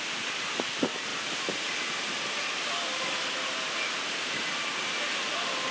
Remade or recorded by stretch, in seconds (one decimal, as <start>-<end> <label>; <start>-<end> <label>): 0.0-5.7 recorded